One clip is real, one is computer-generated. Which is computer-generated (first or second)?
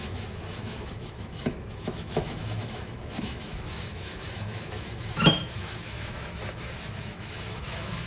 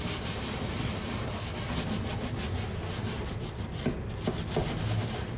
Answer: first